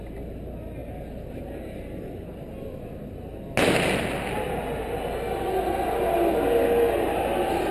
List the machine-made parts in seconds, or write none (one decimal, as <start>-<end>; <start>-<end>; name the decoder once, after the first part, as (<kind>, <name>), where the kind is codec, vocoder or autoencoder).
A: none